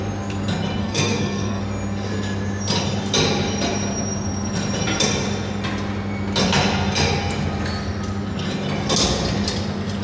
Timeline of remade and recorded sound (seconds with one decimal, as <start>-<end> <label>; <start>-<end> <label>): 0.0-0.8 recorded; 0.8-1.6 remade; 1.6-10.0 recorded